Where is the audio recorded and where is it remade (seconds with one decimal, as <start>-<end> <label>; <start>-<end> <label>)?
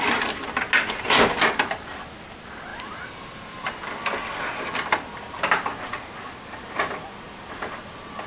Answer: 0.0-8.3 recorded